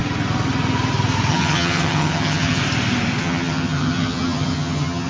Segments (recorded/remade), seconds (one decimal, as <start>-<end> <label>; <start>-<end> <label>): 0.0-1.3 recorded; 1.3-2.6 remade; 2.6-3.2 recorded; 3.2-5.1 remade